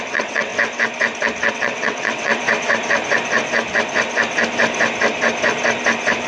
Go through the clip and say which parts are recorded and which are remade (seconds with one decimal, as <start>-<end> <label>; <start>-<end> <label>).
0.0-0.5 remade; 0.5-1.5 recorded; 1.5-2.3 remade; 2.3-6.3 recorded